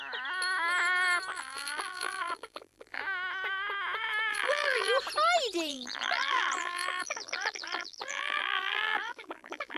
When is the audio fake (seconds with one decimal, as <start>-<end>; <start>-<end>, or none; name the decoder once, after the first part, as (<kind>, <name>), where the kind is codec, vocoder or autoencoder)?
1.3-3.0 (vocoder, BigVGAN v2); 4.3-4.9; 5.7-9.8